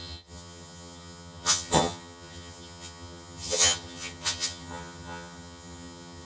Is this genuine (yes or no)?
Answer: no